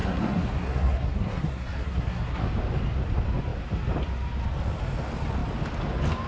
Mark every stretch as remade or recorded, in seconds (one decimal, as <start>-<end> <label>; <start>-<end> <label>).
0.0-2.4 remade; 2.4-6.3 recorded